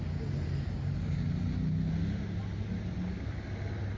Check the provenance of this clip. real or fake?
real